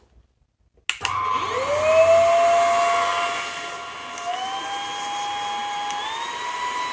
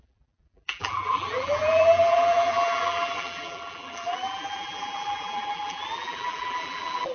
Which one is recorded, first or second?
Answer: first